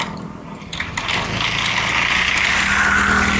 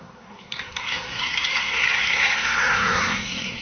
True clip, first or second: first